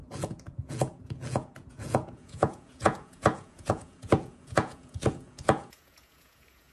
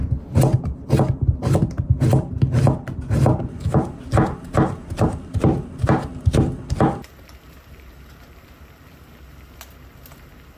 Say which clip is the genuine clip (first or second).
second